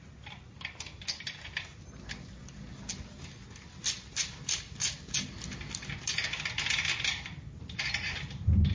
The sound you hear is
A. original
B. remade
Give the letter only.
A